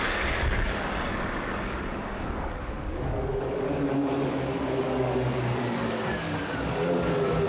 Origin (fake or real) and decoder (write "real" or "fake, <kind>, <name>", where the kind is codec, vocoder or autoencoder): fake, codec, DAC